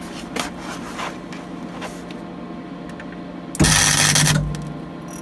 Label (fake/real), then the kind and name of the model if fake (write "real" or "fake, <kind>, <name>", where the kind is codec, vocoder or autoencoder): real